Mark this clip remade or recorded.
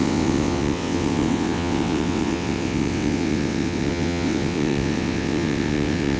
remade